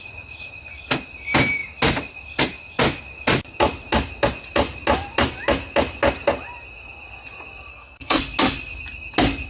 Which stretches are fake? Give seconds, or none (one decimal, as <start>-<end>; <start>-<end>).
7.7-8.2